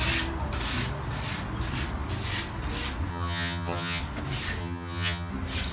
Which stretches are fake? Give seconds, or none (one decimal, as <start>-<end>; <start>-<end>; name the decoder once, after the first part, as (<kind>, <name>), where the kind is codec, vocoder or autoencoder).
3.1-4.0 (vocoder, HiFi-GAN); 4.6-5.3